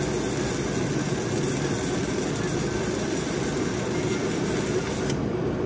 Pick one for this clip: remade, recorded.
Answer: recorded